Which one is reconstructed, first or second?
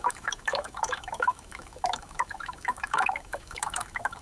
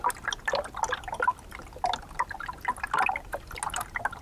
first